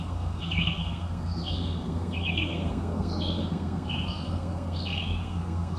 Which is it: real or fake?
fake